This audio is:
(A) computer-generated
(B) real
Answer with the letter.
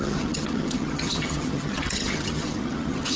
A